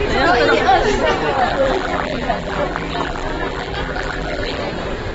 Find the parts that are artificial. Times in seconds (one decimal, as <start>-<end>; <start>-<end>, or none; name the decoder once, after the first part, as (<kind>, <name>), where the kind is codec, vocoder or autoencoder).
1.5-4.6 (vocoder, BigVGAN v2)